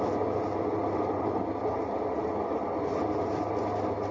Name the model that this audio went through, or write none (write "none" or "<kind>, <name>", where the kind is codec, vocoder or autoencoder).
none